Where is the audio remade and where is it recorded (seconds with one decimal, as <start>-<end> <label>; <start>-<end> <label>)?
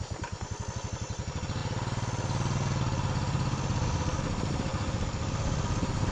0.0-6.1 recorded